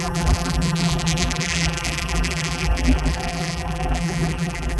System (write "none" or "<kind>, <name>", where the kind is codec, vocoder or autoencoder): vocoder, BigVGAN v2